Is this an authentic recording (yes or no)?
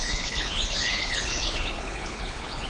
no